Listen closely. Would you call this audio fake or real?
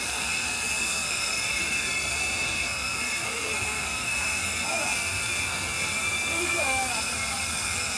fake